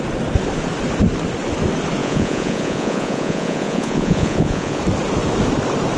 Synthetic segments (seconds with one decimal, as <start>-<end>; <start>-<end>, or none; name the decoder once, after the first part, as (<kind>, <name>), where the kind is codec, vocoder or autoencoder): 2.0-4.8 (vocoder, Vocos)